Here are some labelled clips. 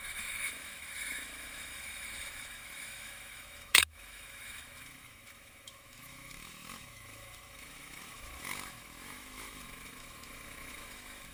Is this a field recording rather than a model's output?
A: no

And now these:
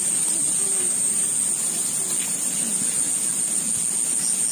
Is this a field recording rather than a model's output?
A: yes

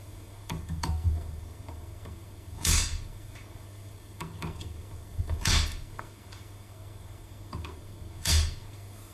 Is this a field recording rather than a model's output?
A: no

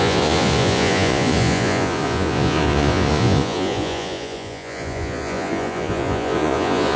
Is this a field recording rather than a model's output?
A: no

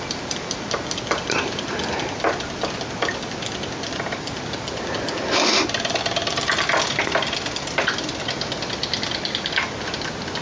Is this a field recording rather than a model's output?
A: yes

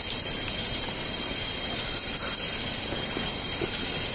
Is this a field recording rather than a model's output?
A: yes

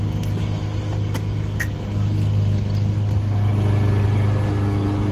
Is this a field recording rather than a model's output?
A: yes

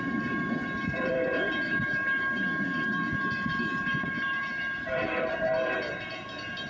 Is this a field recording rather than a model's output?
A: no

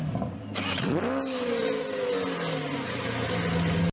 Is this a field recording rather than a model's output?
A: yes